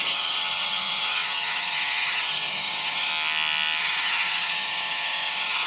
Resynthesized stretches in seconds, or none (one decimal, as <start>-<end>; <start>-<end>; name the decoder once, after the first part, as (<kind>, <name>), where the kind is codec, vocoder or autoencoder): 0.0-3.1 (vocoder, HiFi-GAN); 3.8-5.7